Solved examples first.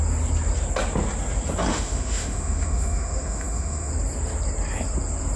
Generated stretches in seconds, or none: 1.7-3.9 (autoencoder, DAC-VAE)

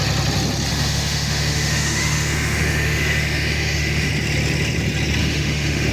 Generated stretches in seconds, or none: 0.7-4.1 (autoencoder, DAC-VAE); 5.2-5.9

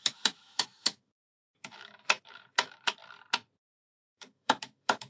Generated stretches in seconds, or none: 0.0-3.0 (autoencoder, DAC-VAE); 4.0-5.1

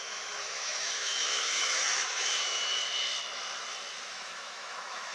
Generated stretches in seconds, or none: 0.0-2.6 (autoencoder, DAC-VAE); 4.1-5.1

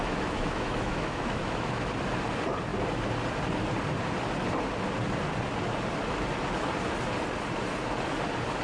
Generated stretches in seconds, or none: 0.0-1.9 (autoencoder, DAC-VAE)

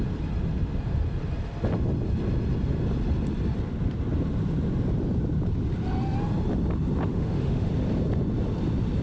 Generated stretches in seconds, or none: 7.1-7.7 (autoencoder, DAC-VAE)

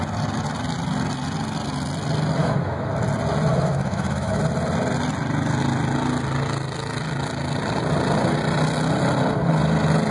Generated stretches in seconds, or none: 2.4-2.9 (autoencoder, DAC-VAE); 3.5-4.4

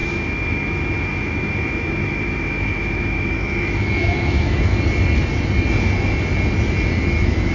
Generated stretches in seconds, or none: 0.0-4.7 (autoencoder, DAC-VAE); 7.1-7.5